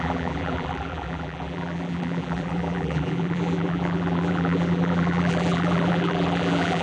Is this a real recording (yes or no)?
no